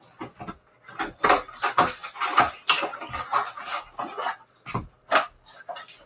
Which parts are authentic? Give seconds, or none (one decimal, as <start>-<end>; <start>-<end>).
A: 0.0-6.1